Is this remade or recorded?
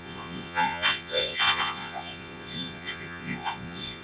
remade